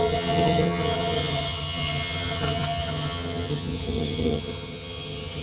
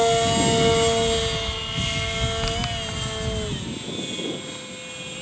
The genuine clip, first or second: second